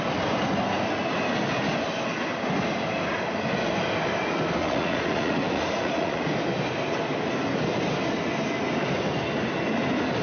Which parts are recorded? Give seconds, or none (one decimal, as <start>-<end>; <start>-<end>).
0.0-4.6; 6.2-10.2